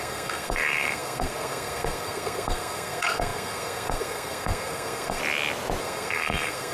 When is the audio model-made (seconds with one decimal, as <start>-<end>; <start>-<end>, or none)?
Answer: 0.0-5.2; 5.8-6.7